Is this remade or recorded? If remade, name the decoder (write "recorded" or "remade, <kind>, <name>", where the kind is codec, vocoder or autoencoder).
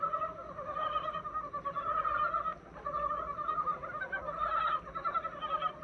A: recorded